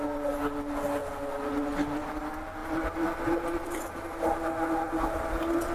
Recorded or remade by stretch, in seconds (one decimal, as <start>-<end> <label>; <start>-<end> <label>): 0.0-5.7 recorded